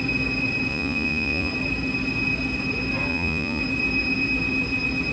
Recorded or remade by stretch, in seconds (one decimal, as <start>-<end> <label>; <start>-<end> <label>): 0.0-0.7 recorded; 0.7-1.5 remade; 1.5-3.1 recorded; 3.1-3.6 remade; 3.6-5.1 recorded